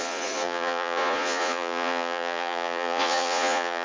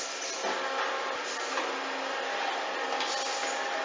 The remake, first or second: first